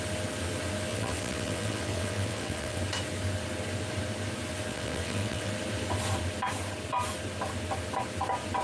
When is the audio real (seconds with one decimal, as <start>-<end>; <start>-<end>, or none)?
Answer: 0.0-0.9; 2.8-4.7; 5.5-8.6